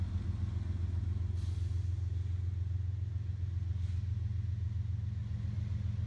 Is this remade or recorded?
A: recorded